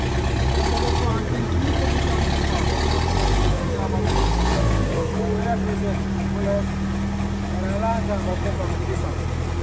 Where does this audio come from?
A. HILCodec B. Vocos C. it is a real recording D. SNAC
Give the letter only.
C